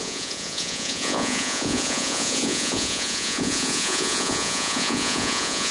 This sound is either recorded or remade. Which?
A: remade